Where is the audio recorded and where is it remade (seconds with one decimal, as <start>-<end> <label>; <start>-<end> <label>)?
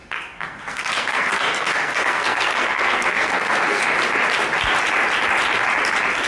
0.0-3.8 remade; 3.8-6.3 recorded